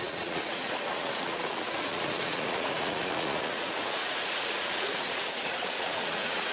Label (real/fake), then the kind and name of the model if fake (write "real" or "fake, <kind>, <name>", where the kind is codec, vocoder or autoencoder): fake, vocoder, Vocos